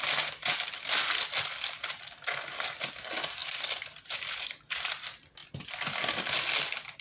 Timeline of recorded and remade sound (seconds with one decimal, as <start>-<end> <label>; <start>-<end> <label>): 0.0-7.0 recorded